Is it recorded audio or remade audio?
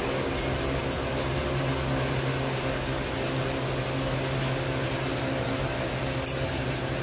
recorded